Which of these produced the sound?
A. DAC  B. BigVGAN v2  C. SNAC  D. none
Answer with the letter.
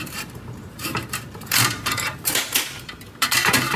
B